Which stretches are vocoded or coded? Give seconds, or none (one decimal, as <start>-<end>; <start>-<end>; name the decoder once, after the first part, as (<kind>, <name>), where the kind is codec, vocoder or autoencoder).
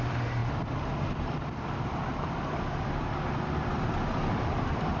0.0-5.0 (vocoder, BigVGAN v2)